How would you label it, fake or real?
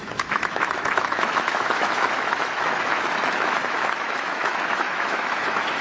fake